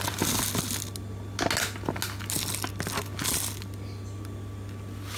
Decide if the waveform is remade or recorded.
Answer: recorded